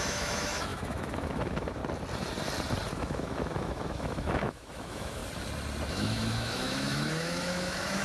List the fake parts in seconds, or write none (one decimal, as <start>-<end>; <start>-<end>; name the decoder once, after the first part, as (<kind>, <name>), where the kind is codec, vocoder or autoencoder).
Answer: 0.0-1.8 (autoencoder, DAC-VAE); 2.9-5.2; 5.9-8.0